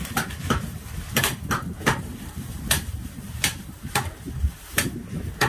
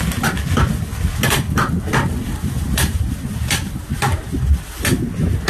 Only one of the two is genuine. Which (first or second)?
second